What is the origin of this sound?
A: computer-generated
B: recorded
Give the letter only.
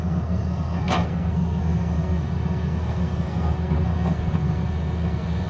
A